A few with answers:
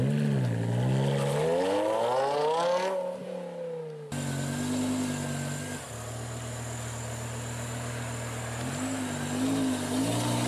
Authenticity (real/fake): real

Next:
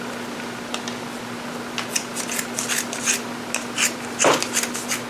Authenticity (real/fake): real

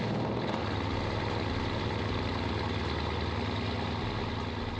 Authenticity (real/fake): real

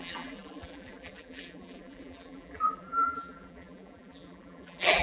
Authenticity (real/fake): fake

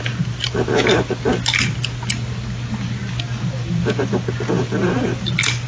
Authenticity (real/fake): real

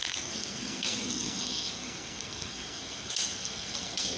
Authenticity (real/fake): fake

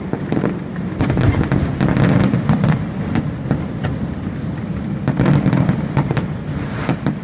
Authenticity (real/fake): real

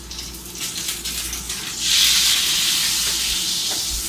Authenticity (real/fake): fake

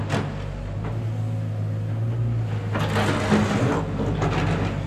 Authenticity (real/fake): real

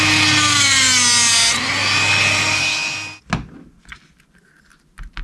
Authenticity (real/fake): real